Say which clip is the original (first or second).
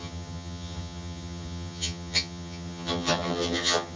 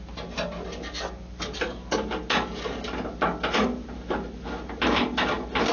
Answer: second